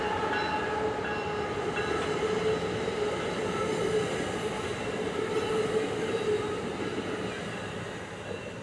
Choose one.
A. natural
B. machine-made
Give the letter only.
A